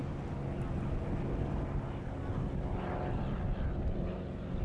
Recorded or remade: recorded